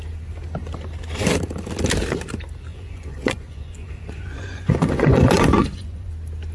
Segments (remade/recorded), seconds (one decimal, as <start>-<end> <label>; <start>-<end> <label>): 0.0-2.7 recorded; 2.7-6.1 remade; 6.1-6.5 recorded

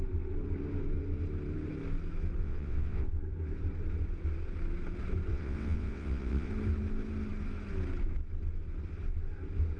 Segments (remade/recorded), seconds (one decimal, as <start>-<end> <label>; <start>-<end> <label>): 0.0-2.4 recorded; 2.4-3.1 remade; 3.1-5.3 recorded; 5.3-6.5 remade; 6.5-9.8 recorded